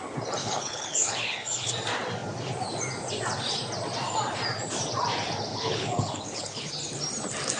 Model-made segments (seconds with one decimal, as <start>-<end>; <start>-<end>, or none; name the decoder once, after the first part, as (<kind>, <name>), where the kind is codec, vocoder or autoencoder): 0.4-1.7 (codec, HILCodec); 5.5-6.7